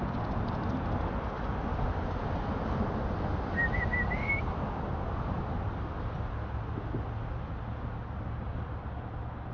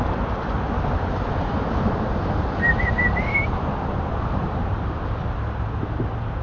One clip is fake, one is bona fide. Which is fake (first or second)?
second